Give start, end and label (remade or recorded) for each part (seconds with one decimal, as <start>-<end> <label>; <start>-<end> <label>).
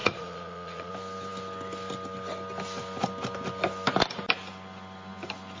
0.0-0.9 remade; 0.9-5.6 recorded